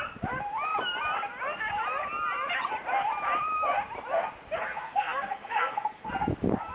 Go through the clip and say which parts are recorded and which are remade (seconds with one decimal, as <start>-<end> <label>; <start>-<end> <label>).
0.0-4.6 recorded; 4.6-6.1 remade; 6.1-6.7 recorded